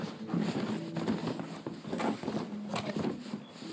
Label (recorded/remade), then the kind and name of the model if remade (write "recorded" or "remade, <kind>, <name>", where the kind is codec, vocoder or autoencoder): recorded